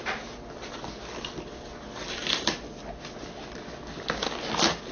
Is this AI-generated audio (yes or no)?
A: no